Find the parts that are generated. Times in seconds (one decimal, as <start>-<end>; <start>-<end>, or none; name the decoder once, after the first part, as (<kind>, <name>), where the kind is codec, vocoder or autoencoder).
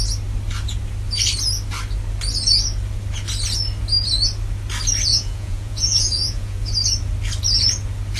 5.1-6.7 (vocoder, Vocos)